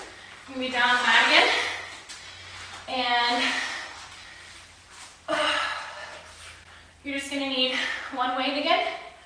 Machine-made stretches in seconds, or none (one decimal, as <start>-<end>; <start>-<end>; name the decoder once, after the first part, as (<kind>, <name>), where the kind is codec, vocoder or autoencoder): 1.0-1.5 (vocoder, WaveNeXt)